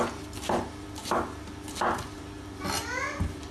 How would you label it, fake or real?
real